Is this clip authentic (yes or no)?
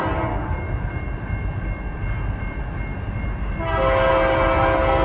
yes